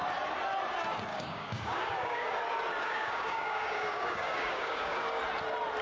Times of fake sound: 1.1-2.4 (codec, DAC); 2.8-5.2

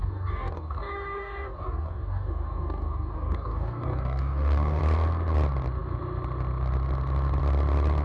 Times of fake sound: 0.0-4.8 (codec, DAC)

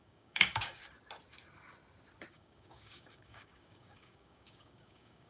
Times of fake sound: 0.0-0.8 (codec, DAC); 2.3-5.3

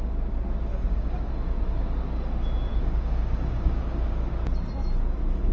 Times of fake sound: 0.7-1.3 (codec, DAC); 2.7-4.3

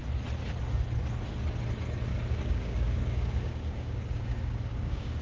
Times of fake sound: 2.1-5.2 (codec, DAC)

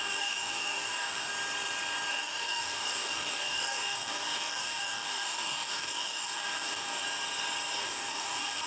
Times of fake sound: 0.0-1.3 (codec, DAC); 2.1-7.0; 7.8-8.7

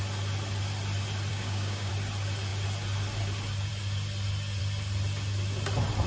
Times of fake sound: 1.3-1.9 (codec, DAC)

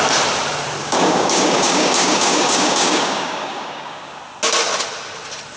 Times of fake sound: 0.8-4.2 (codec, DAC)